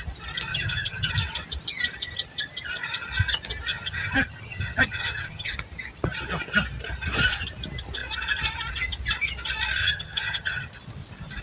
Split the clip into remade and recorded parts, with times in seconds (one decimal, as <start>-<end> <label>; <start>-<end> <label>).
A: 0.0-0.5 recorded; 0.5-1.1 remade; 1.1-3.7 recorded; 3.7-5.5 remade; 5.5-9.8 recorded; 9.8-10.6 remade; 10.6-11.4 recorded